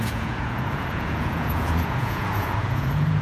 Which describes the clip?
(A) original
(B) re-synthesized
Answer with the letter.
B